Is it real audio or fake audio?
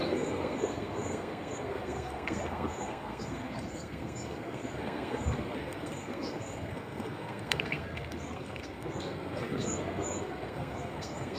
fake